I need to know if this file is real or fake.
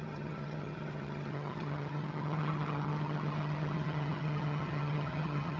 fake